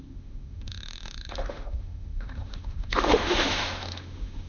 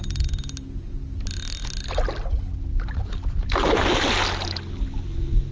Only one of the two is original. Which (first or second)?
second